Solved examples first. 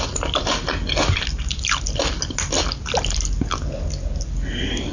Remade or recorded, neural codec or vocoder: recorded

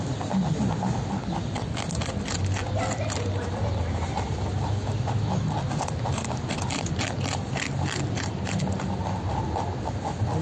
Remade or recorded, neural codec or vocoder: recorded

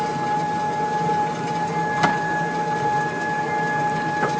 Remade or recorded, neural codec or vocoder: recorded